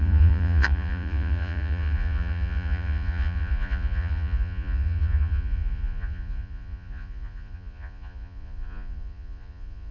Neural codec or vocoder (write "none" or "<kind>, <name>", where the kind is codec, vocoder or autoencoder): vocoder, Vocos